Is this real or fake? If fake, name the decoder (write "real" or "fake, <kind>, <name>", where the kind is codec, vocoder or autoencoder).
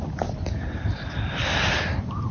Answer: real